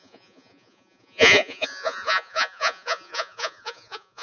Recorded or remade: remade